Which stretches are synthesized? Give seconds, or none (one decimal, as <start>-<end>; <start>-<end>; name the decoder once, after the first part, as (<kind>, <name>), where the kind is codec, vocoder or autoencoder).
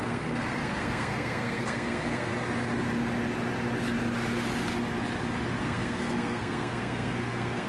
0.0-2.3 (codec, SNAC); 5.6-7.7